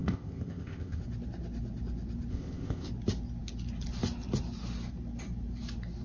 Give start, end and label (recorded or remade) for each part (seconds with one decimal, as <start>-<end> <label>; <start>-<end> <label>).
0.0-1.0 remade; 1.0-2.3 recorded; 2.3-2.9 remade; 2.9-6.0 recorded